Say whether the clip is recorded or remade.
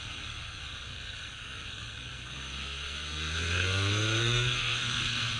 remade